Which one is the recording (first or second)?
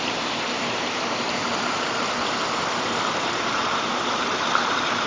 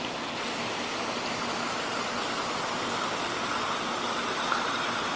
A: second